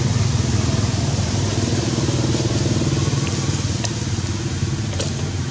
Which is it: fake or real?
real